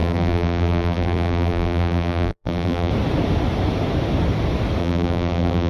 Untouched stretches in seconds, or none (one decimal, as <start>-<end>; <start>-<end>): 2.9-4.8